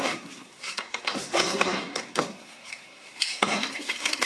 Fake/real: fake